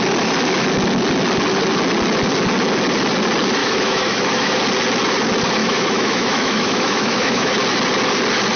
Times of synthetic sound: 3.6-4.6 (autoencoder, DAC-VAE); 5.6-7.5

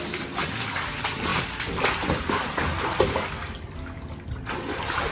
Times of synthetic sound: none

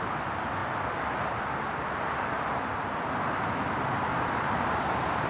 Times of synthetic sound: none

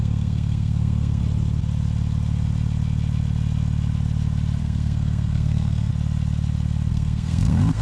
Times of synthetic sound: 0.0-1.2 (codec, SNAC); 4.6-5.9; 6.9-7.8

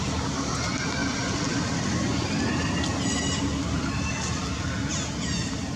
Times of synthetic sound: none